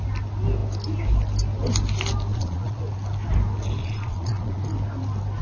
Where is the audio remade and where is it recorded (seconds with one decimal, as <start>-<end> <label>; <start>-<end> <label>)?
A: 0.0-2.3 recorded; 2.3-2.8 remade; 2.8-3.8 recorded; 3.8-4.6 remade; 4.6-5.4 recorded